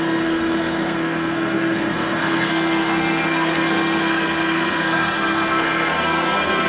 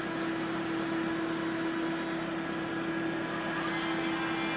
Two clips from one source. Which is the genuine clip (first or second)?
second